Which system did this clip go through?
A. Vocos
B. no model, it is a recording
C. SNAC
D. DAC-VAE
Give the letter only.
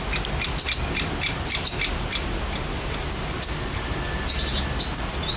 B